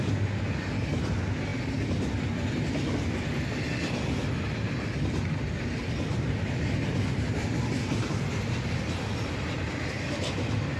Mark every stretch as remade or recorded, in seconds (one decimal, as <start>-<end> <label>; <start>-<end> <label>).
0.0-5.8 recorded; 5.8-6.5 remade; 6.5-10.8 recorded

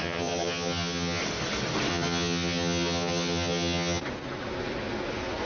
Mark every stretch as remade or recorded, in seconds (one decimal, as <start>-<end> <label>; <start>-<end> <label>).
0.0-1.2 remade; 1.2-1.9 recorded; 1.9-4.0 remade; 4.0-5.5 recorded

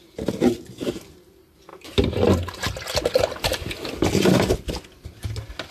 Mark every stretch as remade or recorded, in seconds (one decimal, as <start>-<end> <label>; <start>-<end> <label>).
0.0-5.7 recorded

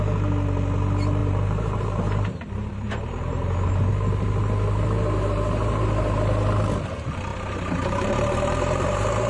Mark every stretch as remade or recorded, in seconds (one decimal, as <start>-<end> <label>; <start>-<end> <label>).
0.0-1.2 recorded; 1.2-3.9 remade; 3.9-7.3 recorded; 7.3-9.3 remade

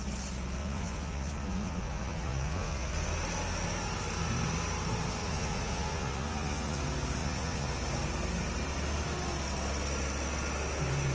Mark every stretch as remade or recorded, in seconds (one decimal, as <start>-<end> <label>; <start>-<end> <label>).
0.0-0.6 recorded; 0.6-2.9 remade; 2.9-5.2 recorded; 5.2-6.8 remade; 6.8-7.2 recorded; 7.2-7.8 remade; 7.8-11.1 recorded

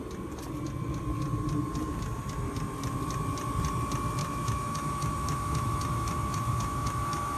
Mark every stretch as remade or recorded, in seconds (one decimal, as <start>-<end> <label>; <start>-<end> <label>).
0.0-4.2 recorded; 4.2-7.4 remade